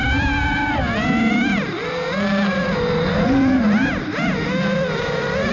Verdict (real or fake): real